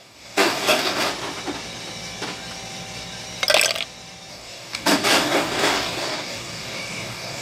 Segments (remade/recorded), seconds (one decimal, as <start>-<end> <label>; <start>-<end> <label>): 0.0-1.1 remade; 1.1-4.3 recorded; 4.3-7.4 remade